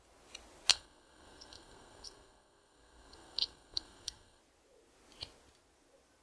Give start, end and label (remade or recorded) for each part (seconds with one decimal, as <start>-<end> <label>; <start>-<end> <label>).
0.0-0.7 recorded; 0.7-4.4 remade; 4.4-6.2 recorded